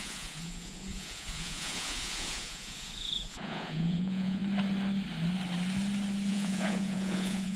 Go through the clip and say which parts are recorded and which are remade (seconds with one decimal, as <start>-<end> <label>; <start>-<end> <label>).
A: 0.0-4.4 remade; 4.4-6.3 recorded; 6.3-7.6 remade